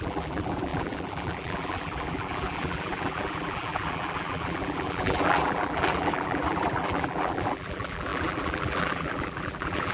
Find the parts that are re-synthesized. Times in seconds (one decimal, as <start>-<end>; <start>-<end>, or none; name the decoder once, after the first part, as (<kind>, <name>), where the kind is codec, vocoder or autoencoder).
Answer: 0.0-9.9 (vocoder, BigVGAN v2)